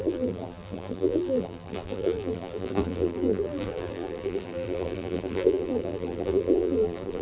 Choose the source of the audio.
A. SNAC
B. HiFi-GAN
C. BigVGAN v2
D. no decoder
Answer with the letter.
C